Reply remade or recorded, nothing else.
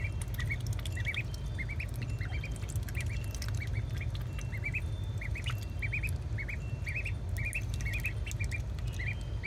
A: recorded